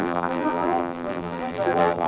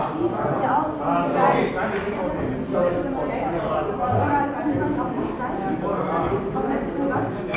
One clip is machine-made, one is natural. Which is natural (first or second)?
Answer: second